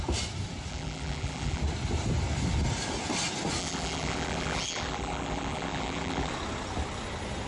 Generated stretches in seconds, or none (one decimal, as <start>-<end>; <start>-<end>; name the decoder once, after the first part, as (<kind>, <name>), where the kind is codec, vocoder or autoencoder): 0.7-1.6 (vocoder, BigVGAN v2); 3.6-6.3

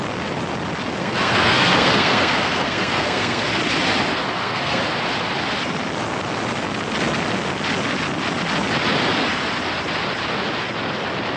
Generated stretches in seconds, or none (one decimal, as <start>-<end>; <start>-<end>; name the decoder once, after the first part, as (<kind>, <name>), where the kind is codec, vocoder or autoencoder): 1.0-3.5 (codec, SNAC); 4.1-4.8

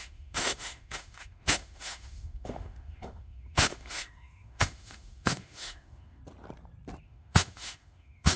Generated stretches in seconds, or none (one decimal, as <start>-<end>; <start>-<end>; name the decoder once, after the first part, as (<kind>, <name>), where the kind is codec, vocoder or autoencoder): 0.0-6.2 (autoencoder, DAC-VAE); 7.0-8.4

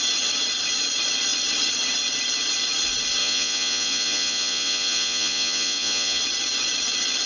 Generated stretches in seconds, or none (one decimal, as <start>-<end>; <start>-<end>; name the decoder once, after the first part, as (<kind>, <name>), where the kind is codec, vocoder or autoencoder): 3.2-6.2 (vocoder, Vocos)

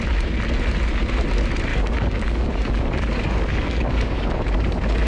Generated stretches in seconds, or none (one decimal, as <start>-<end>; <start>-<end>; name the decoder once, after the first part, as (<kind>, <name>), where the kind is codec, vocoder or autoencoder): 1.7-5.1 (codec, DAC)

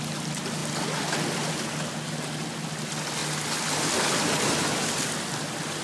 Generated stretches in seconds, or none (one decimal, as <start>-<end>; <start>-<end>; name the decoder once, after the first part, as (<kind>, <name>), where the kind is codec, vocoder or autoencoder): none

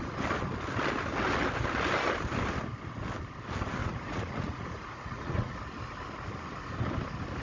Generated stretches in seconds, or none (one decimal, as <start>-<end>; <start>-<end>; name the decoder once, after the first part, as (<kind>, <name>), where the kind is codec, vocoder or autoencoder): 3.8-5.5 (vocoder, Vocos)

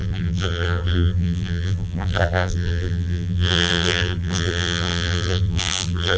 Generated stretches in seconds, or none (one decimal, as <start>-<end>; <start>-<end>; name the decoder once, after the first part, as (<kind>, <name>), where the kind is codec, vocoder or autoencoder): 0.0-6.2 (vocoder, BigVGAN v2)